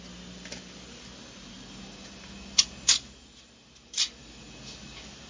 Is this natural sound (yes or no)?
yes